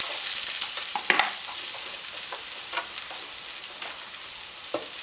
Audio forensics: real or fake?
real